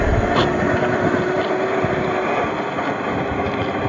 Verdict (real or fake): real